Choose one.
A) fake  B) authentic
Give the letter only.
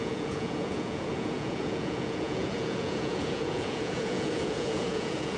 A